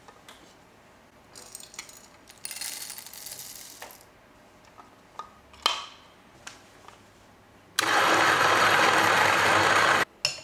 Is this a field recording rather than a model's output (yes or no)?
yes